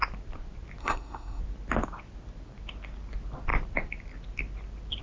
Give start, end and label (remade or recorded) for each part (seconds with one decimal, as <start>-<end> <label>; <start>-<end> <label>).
0.0-0.8 recorded; 0.8-1.4 remade; 1.4-5.0 recorded